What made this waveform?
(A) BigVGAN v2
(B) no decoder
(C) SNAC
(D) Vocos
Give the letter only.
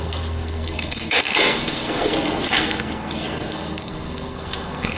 C